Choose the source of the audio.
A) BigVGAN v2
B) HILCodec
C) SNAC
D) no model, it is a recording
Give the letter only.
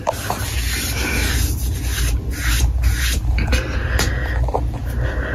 D